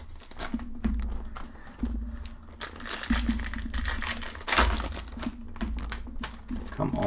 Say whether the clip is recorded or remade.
recorded